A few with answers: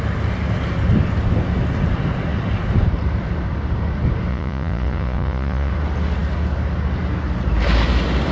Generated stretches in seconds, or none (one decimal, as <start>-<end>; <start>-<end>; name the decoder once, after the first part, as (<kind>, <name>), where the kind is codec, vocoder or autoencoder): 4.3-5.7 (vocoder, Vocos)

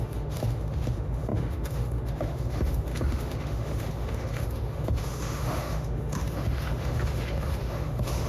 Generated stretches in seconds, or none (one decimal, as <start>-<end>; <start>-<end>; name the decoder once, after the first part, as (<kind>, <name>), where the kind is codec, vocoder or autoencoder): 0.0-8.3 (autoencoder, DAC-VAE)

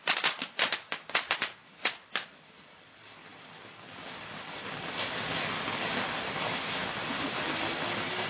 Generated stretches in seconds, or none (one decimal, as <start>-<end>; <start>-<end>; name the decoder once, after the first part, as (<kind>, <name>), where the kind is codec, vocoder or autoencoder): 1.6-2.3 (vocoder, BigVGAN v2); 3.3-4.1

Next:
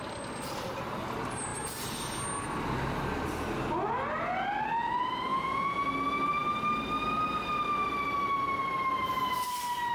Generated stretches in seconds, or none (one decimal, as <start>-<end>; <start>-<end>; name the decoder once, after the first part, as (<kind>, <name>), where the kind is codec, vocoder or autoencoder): 5.3-5.9 (vocoder, Vocos)

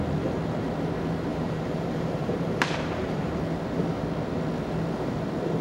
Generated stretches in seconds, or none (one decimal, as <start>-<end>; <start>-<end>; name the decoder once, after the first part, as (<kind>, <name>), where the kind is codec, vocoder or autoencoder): 1.3-3.4 (vocoder, BigVGAN v2)